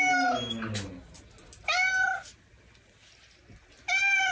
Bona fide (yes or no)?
yes